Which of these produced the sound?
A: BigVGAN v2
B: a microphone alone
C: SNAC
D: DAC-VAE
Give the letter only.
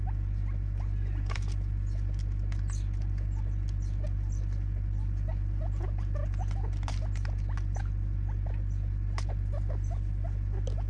B